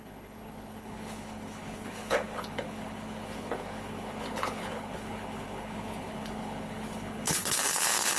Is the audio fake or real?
fake